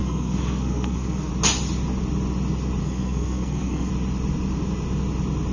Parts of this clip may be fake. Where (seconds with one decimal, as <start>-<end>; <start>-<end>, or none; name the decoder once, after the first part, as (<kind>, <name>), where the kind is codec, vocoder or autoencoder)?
0.0-1.3 (codec, SNAC); 2.8-3.9